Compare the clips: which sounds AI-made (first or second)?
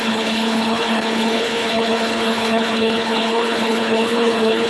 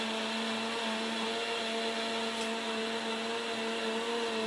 first